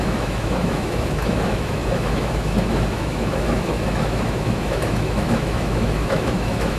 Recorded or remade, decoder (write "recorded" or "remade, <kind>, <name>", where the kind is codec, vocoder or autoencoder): remade, autoencoder, DAC-VAE